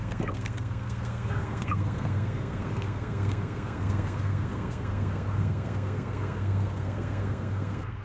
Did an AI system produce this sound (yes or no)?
yes